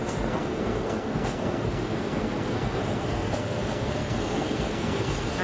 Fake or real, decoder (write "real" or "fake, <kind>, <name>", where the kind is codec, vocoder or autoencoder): fake, codec, SNAC